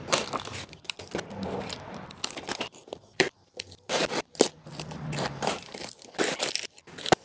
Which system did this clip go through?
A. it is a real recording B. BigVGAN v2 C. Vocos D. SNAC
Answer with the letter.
B